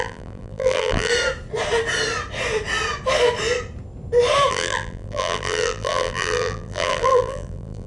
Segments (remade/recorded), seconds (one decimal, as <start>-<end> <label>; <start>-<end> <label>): 0.0-1.1 remade; 1.1-4.5 recorded; 4.5-7.9 remade